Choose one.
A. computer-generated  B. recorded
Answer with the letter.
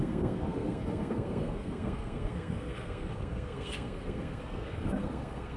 A